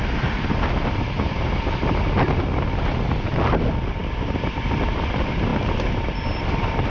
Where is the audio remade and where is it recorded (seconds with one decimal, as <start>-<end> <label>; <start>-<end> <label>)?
0.0-6.9 recorded